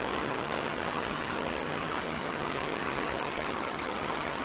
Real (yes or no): no